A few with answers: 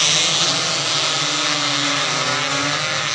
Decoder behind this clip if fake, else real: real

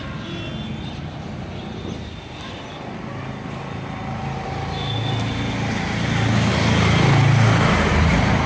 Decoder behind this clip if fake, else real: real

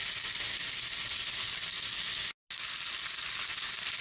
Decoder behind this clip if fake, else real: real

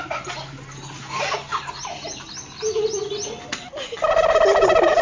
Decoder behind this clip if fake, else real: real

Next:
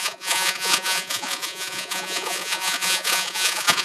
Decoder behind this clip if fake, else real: fake, vocoder, Vocos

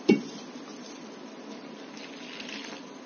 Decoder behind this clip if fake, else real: real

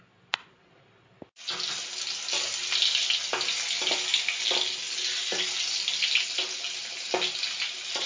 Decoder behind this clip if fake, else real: real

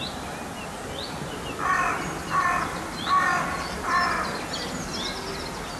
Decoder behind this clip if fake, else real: real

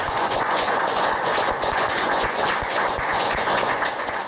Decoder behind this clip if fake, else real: fake, vocoder, Vocos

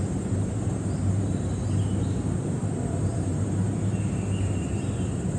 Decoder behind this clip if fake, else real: real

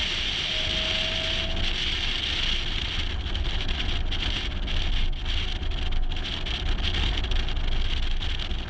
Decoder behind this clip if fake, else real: real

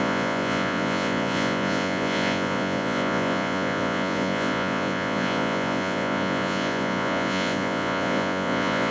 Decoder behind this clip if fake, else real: fake, vocoder, Vocos